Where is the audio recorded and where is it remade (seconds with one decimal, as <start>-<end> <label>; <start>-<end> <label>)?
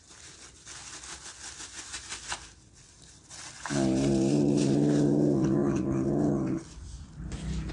0.0-7.7 recorded